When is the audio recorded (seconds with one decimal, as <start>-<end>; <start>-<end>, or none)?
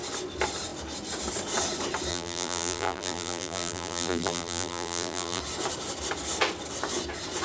0.0-2.1; 5.4-7.4